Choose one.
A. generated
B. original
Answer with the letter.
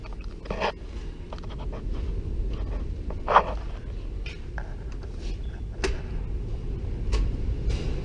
B